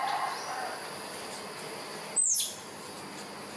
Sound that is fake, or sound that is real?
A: real